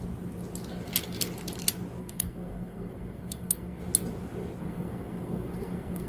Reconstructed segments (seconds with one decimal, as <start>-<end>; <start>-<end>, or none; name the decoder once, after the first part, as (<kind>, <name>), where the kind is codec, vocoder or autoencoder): 2.0-3.8 (codec, SNAC); 4.6-6.1